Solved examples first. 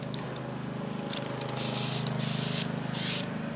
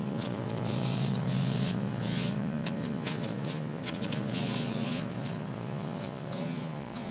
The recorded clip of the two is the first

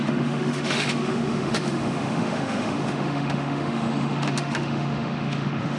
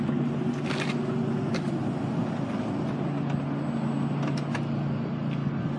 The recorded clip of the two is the second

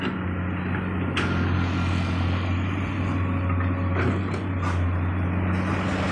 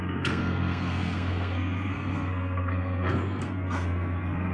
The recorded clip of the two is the first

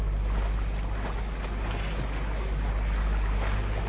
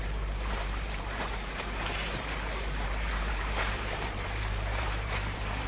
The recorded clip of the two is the first